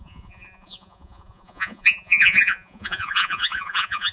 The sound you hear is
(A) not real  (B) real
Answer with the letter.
A